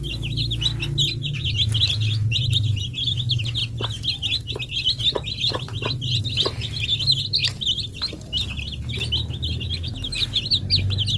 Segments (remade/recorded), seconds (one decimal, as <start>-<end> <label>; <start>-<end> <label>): 0.0-11.2 recorded